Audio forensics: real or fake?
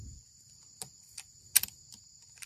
real